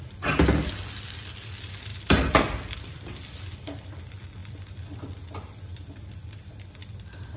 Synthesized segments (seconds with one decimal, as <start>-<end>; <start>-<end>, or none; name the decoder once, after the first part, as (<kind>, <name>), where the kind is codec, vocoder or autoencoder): 1.9-4.0 (vocoder, BigVGAN v2); 4.4-5.3; 5.7-7.4